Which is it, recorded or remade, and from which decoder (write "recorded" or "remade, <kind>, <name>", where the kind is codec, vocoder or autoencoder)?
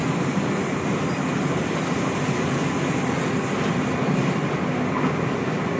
recorded